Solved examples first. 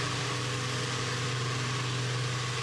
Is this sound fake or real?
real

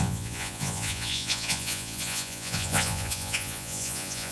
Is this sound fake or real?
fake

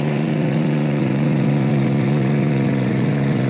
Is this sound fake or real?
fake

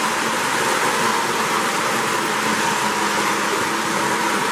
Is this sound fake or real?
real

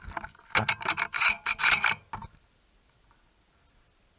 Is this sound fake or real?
real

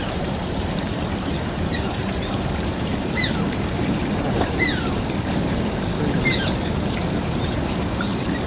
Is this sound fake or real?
fake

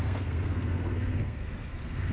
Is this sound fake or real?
fake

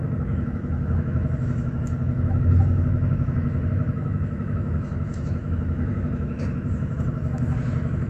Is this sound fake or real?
fake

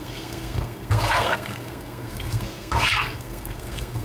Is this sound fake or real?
fake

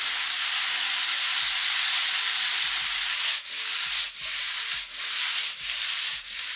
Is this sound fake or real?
real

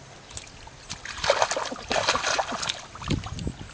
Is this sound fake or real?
real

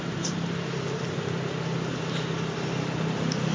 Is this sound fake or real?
real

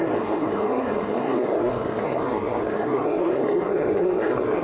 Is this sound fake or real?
fake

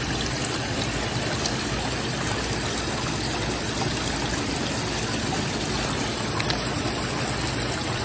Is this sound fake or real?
real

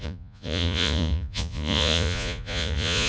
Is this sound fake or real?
fake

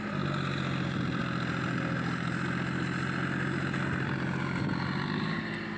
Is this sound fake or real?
real